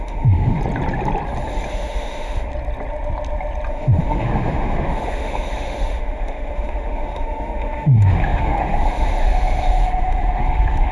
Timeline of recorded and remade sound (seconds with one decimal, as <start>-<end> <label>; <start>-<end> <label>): 0.0-0.6 remade; 0.6-1.7 recorded; 1.7-2.5 remade; 2.5-3.7 recorded; 3.7-10.9 remade